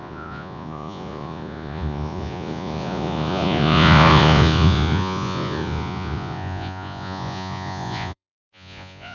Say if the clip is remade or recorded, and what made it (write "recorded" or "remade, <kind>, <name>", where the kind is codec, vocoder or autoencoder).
remade, vocoder, Vocos